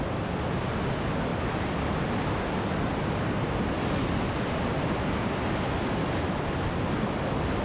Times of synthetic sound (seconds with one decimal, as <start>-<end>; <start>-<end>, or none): none